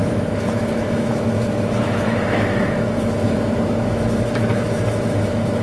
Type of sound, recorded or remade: remade